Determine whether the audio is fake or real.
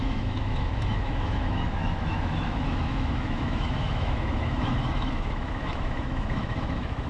fake